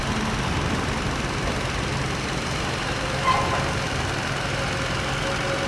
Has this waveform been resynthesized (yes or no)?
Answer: no